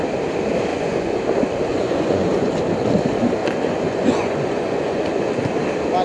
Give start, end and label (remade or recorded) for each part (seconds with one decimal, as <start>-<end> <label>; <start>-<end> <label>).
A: 0.0-0.7 recorded; 0.7-1.2 remade; 1.2-1.7 recorded; 1.7-2.5 remade; 2.5-3.4 recorded; 3.4-5.2 remade; 5.2-6.0 recorded